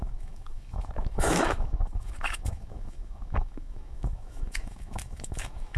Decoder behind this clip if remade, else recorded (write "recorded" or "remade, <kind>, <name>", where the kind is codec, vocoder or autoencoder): remade, autoencoder, DAC-VAE